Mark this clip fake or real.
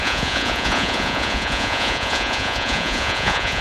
fake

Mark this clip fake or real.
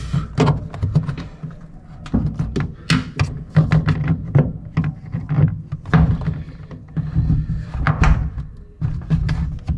real